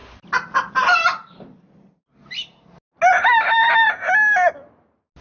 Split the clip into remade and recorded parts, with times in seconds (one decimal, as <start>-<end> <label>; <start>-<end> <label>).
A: 0.0-5.2 recorded